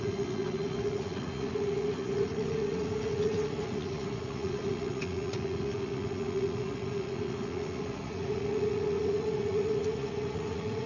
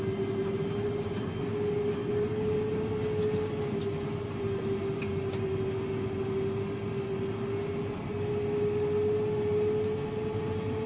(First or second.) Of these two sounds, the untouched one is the second